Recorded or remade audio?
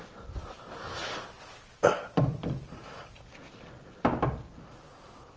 recorded